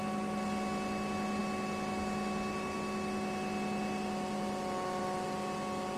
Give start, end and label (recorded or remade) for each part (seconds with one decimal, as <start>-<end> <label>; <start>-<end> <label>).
0.0-6.0 recorded

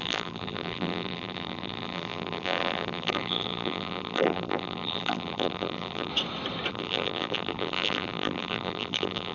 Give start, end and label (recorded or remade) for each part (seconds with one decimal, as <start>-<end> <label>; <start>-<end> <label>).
0.0-6.1 remade; 6.1-6.7 recorded; 6.7-9.3 remade